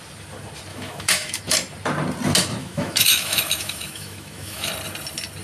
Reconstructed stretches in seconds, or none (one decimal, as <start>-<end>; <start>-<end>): 0.7-1.4; 2.6-4.7